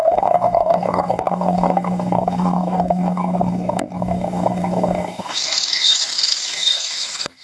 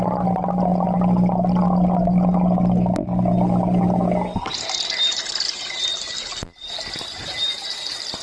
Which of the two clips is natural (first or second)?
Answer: second